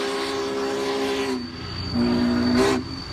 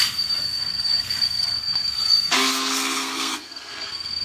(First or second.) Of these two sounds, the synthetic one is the second